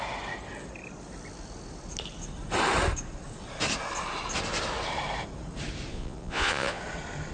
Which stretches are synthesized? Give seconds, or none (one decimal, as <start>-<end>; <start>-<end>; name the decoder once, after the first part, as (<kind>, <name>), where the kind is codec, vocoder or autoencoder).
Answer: 5.9-6.8 (vocoder, Vocos)